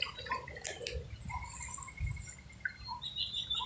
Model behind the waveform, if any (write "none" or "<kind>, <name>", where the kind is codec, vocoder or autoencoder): none